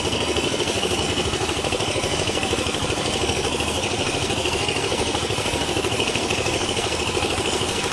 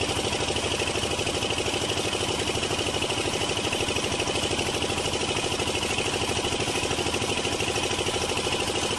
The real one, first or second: second